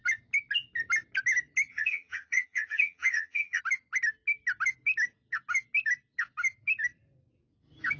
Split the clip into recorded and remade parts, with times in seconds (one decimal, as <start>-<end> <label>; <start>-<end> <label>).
0.0-1.7 recorded; 1.7-3.6 remade; 3.6-8.0 recorded